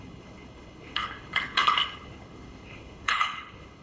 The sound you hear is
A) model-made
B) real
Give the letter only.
A